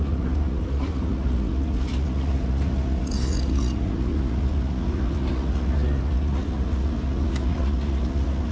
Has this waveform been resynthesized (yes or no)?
yes